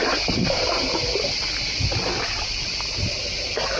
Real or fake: real